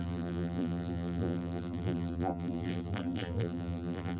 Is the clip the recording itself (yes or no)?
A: no